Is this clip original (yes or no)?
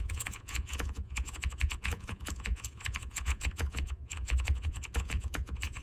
no